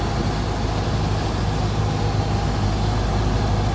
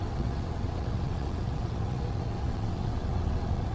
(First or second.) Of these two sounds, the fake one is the second